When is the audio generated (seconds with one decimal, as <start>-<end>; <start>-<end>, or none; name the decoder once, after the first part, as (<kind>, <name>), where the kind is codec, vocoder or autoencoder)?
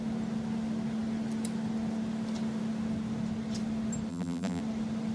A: 4.1-4.6 (vocoder, BigVGAN v2)